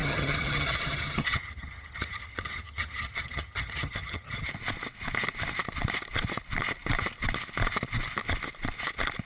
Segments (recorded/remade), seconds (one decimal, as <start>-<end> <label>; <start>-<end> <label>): 0.0-4.5 remade; 4.5-9.3 recorded